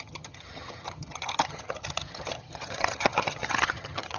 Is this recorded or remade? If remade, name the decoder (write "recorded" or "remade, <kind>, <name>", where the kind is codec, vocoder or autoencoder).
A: remade, vocoder, HiFi-GAN